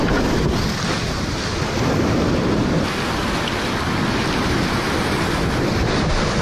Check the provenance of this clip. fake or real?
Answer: real